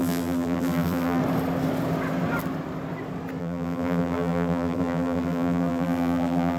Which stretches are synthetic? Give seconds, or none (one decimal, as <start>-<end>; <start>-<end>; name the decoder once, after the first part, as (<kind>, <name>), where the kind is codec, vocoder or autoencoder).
0.0-1.2 (vocoder, BigVGAN v2); 3.4-6.6